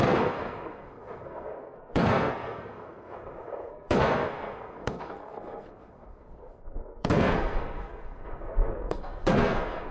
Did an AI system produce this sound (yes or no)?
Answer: yes